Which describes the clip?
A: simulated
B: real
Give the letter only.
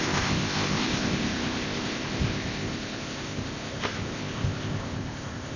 A